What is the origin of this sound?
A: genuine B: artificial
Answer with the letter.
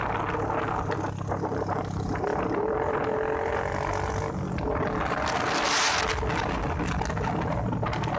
A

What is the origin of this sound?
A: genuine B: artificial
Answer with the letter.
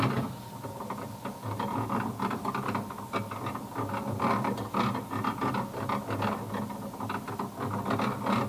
A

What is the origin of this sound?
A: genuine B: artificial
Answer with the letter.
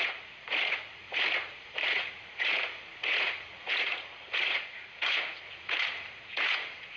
B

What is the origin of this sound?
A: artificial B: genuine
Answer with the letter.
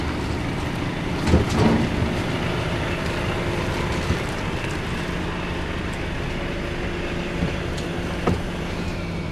B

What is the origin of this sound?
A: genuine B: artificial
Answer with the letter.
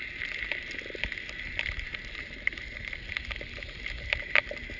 A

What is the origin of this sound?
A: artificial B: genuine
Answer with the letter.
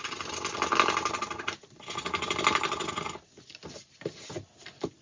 B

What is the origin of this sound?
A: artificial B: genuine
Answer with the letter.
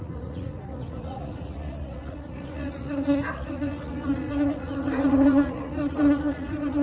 A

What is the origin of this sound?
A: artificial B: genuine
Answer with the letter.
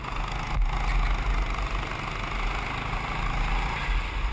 B